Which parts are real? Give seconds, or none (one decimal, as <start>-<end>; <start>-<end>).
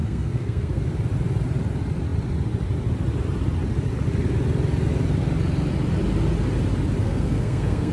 0.8-7.0